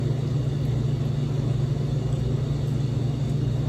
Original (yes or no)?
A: yes